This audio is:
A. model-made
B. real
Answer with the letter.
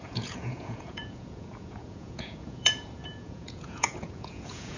A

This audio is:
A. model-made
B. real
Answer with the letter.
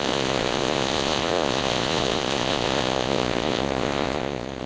A